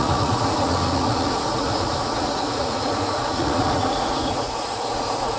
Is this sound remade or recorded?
remade